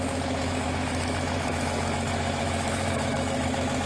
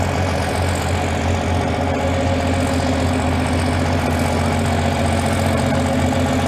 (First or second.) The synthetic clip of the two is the first